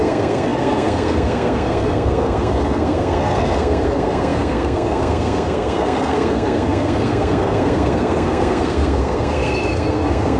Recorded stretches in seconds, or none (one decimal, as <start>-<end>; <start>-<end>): none